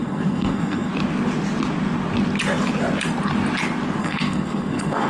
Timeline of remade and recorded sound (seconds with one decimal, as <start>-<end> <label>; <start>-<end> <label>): 0.0-0.9 remade; 0.9-4.0 recorded; 4.0-5.1 remade